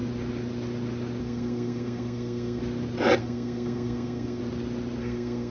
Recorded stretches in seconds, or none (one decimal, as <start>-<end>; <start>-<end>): 0.0-1.2; 2.6-3.2; 4.4-5.0